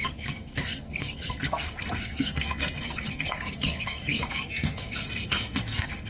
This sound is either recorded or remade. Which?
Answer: remade